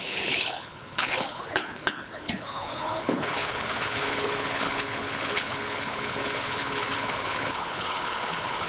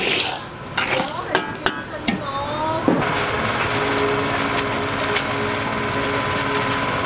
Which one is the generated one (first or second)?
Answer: first